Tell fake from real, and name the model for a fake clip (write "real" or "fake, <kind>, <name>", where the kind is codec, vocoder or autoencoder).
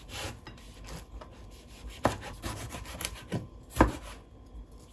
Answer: real